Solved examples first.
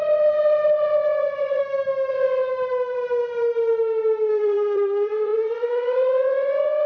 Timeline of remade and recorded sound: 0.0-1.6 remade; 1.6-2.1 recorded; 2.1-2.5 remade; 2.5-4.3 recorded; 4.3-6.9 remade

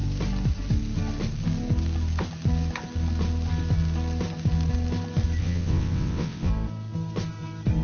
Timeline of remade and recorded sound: 0.0-5.4 recorded; 5.4-6.5 remade; 6.5-7.8 recorded

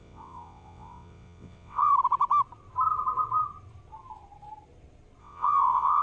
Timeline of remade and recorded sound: 0.0-1.9 remade; 1.9-5.2 recorded; 5.2-6.0 remade

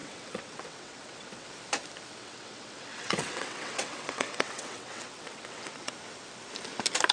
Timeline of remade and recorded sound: 0.0-1.5 remade; 1.5-2.2 recorded; 2.2-5.9 remade; 5.9-7.1 recorded